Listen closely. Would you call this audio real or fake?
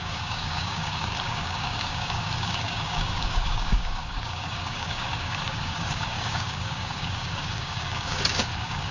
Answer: fake